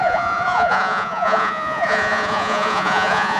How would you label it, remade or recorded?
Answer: remade